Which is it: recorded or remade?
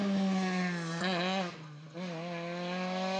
recorded